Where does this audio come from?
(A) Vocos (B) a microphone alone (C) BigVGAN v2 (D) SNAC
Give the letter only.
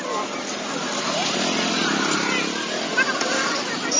B